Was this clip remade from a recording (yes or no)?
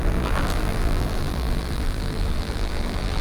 yes